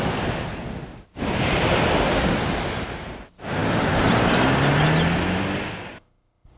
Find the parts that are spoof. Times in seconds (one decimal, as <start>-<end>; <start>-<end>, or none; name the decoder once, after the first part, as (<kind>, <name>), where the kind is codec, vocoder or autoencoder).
none

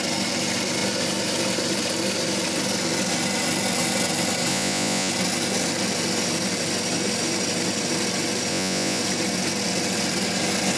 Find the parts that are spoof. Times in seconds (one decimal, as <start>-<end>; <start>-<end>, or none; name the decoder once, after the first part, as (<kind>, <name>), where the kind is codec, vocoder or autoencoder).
4.5-5.1 (vocoder, Vocos); 8.5-9.0